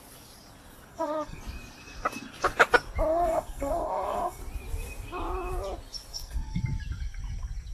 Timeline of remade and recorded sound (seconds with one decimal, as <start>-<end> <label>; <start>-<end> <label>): 0.0-0.9 recorded; 0.9-1.4 remade; 1.4-3.1 recorded; 3.1-4.4 remade; 4.4-6.1 recorded; 6.1-6.6 remade; 6.6-7.7 recorded